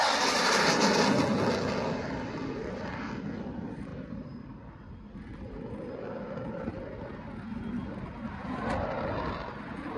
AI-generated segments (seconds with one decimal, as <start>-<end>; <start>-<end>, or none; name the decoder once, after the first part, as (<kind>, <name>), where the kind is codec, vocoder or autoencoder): 3.9-5.0 (vocoder, BigVGAN v2)